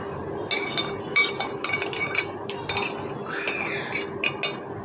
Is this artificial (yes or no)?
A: no